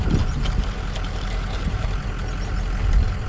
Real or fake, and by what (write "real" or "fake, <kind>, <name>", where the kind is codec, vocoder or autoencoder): real